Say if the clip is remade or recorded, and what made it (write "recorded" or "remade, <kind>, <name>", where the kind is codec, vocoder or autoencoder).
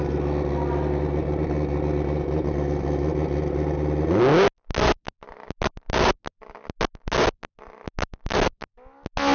recorded